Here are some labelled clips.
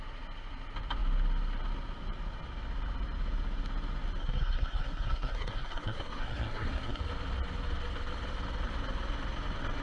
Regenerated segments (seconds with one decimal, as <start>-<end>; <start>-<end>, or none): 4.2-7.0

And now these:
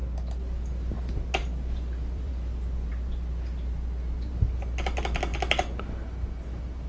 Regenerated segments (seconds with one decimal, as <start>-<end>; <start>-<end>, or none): 1.4-2.3

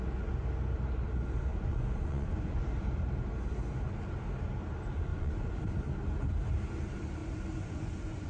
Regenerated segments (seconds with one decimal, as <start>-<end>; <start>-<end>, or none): 1.5-2.6; 5.1-5.7; 7.2-8.3

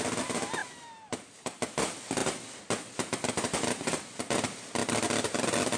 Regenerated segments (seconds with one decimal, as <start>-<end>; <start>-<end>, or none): none